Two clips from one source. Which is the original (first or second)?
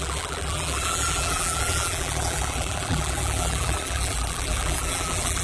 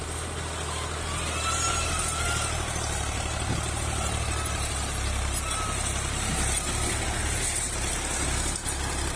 second